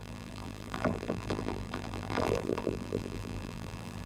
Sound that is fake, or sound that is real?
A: fake